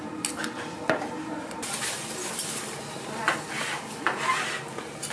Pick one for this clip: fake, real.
real